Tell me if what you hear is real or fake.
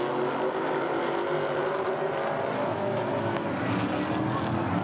real